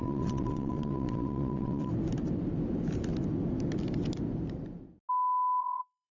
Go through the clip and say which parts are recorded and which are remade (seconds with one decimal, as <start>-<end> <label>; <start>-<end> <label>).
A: 0.0-1.9 remade; 1.9-5.6 recorded; 5.6-6.1 remade

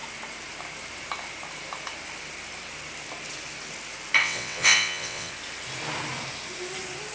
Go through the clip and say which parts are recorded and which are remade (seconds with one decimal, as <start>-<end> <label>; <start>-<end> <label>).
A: 0.0-4.2 recorded; 4.2-5.3 remade; 5.3-7.1 recorded

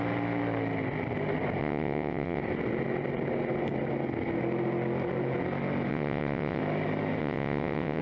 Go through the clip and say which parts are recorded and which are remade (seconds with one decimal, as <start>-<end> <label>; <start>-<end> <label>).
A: 0.0-1.6 recorded; 1.6-2.4 remade; 2.4-5.9 recorded; 5.9-6.6 remade; 6.6-7.2 recorded; 7.2-8.0 remade

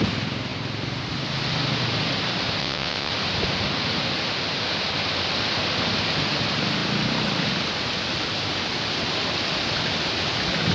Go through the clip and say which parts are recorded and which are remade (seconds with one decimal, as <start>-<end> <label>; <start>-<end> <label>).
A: 0.0-2.6 recorded; 2.6-3.1 remade; 3.1-10.7 recorded

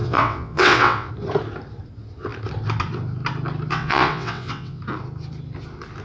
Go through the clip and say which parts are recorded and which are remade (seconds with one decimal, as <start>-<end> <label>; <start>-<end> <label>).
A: 0.0-1.1 remade; 1.1-3.7 recorded; 3.7-4.8 remade; 4.8-6.0 recorded

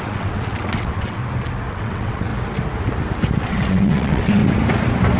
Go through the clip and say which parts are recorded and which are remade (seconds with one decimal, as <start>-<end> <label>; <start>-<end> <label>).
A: 0.0-1.2 remade; 1.2-1.7 recorded; 1.7-2.3 remade; 2.3-3.4 recorded; 3.4-4.4 remade; 4.4-5.2 recorded